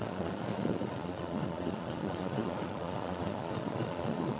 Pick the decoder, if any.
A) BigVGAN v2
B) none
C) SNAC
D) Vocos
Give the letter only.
D